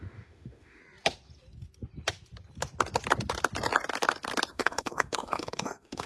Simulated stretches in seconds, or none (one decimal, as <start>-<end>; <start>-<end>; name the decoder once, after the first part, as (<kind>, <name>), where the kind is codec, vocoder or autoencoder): 0.0-0.8 (autoencoder, DAC-VAE); 4.5-6.1